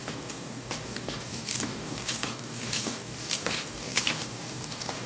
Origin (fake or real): fake